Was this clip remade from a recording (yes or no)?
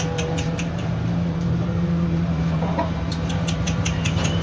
yes